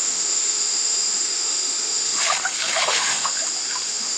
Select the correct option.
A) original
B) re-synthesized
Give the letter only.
B